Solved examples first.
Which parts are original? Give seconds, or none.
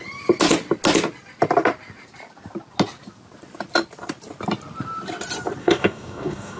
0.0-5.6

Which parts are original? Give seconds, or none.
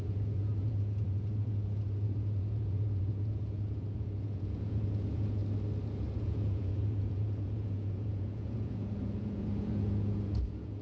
5.4-6.2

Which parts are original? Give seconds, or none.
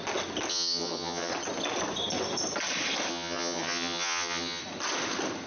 0.0-0.5; 1.3-3.1; 4.6-5.5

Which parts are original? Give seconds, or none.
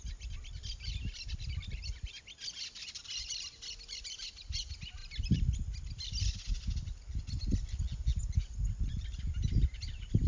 0.0-10.3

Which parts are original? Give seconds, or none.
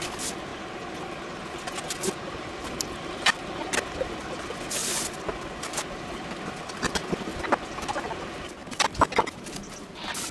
0.5-2.3; 4.8-6.7; 7.3-7.9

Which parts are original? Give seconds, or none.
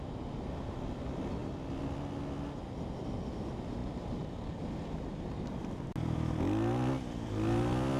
0.0-8.0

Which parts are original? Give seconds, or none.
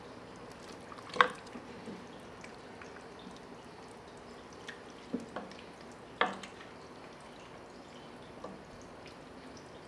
0.0-2.5; 3.1-9.9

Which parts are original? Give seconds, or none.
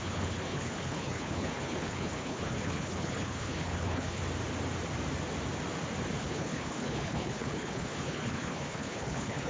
4.2-6.2